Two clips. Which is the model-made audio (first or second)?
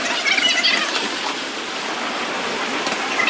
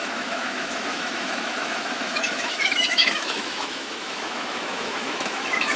second